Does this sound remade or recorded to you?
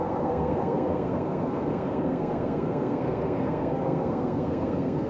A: remade